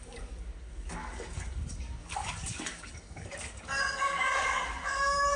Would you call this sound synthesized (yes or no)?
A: yes